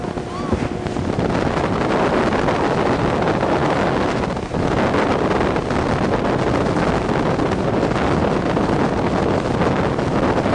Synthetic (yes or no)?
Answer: no